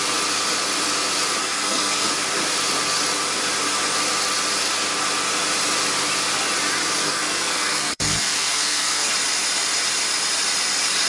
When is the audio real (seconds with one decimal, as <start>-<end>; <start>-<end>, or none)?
0.0-1.4; 2.1-7.0; 9.1-11.1